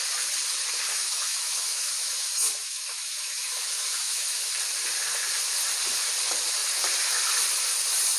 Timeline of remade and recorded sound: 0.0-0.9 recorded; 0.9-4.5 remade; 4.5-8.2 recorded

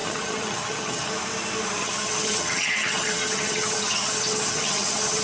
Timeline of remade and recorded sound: 0.0-1.1 remade; 1.1-1.8 recorded; 1.8-5.2 remade

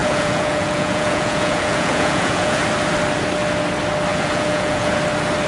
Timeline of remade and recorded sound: 0.0-2.6 remade; 2.6-4.1 recorded; 4.1-5.0 remade; 5.0-5.5 recorded

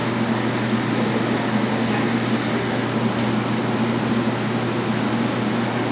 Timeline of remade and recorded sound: 0.0-5.9 recorded

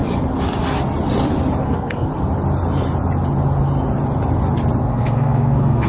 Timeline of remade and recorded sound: 0.0-1.6 recorded; 1.6-2.1 remade; 2.1-4.8 recorded; 4.8-5.9 remade

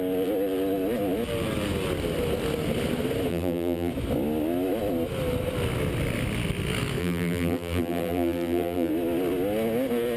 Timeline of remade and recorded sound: 0.0-3.3 recorded; 3.3-3.9 remade; 3.9-7.0 recorded; 7.0-8.9 remade; 8.9-10.2 recorded